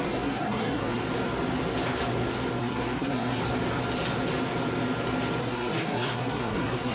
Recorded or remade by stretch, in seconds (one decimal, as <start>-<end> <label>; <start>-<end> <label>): 0.0-1.0 remade; 1.0-2.6 recorded; 2.6-3.4 remade; 3.4-5.4 recorded; 5.4-6.9 remade